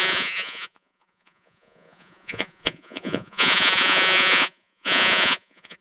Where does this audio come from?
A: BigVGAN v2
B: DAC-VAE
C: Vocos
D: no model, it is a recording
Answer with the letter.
C